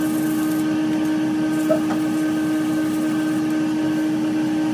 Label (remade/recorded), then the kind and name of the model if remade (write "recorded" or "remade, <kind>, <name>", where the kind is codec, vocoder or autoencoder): recorded